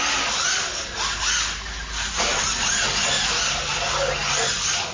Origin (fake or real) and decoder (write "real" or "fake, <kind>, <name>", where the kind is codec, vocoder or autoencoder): real